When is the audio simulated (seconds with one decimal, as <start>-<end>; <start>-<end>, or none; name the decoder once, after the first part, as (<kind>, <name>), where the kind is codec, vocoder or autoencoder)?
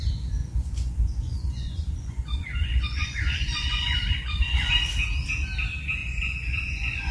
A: 0.4-4.7 (vocoder, Vocos); 6.0-7.1